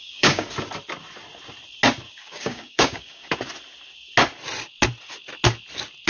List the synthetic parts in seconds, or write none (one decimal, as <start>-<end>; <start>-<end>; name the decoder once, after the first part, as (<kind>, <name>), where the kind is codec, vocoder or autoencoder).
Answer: 0.0-0.5 (codec, DAC); 2.1-3.3